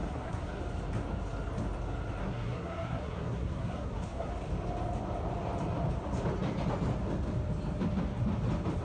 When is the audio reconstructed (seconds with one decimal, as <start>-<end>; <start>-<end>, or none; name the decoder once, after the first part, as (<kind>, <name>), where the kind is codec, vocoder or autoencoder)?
0.0-0.6 (codec, SNAC); 2.2-4.3